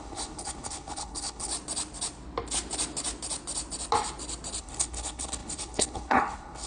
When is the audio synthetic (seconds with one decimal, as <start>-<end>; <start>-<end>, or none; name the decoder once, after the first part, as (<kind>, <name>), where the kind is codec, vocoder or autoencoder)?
0.0-1.5 (codec, HILCodec); 4.6-6.7